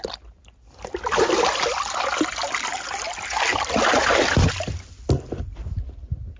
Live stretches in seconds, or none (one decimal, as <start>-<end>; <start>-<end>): 0.0-6.4